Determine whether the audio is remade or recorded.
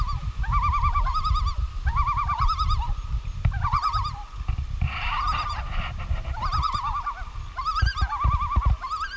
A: remade